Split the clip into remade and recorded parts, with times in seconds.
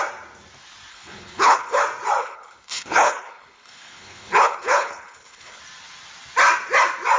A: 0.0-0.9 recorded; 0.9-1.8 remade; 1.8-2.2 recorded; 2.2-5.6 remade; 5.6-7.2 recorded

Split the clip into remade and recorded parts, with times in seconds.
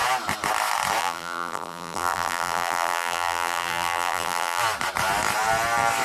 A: 0.0-1.0 recorded; 1.0-4.6 remade; 4.6-6.0 recorded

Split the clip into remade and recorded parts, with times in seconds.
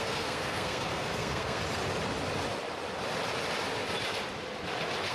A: 0.0-1.6 remade; 1.6-5.1 recorded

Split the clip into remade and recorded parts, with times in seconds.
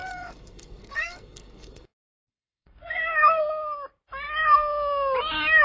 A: 0.0-3.4 remade; 3.4-5.6 recorded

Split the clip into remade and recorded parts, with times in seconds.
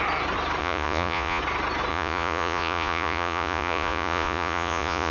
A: 0.0-0.6 recorded; 0.6-1.4 remade; 1.4-1.9 recorded; 1.9-5.1 remade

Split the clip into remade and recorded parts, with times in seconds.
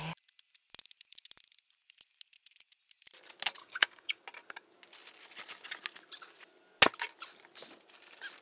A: 0.0-3.6 recorded; 3.6-4.2 remade; 4.2-8.4 recorded